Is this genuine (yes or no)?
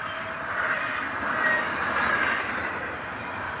yes